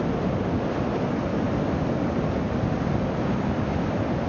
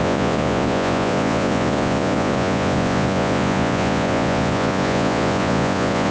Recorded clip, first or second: first